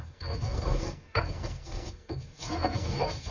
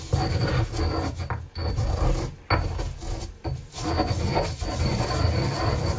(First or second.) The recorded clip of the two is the second